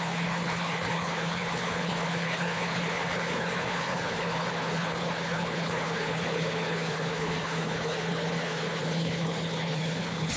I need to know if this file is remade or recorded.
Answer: remade